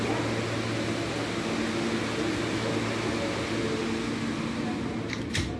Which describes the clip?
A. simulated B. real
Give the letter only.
B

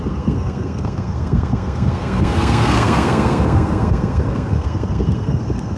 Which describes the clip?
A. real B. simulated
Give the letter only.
B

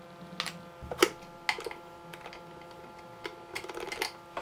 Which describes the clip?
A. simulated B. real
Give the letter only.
B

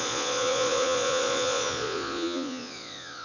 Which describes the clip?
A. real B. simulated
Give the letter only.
B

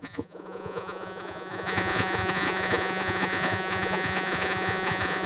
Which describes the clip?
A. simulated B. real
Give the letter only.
A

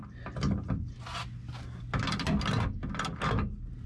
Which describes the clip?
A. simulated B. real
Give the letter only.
B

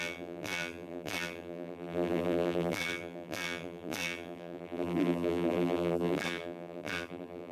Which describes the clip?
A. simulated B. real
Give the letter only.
A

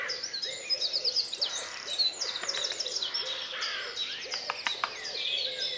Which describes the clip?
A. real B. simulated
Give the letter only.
A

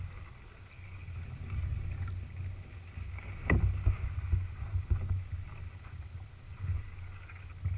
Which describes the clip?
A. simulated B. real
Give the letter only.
B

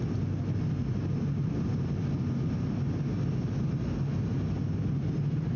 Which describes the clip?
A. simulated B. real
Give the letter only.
B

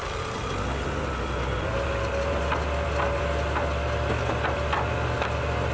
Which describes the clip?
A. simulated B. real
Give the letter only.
B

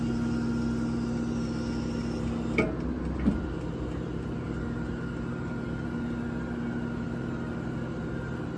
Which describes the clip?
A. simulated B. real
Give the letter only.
B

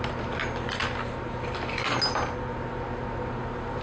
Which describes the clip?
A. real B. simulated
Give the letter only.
A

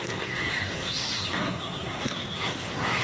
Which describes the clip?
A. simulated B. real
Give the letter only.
A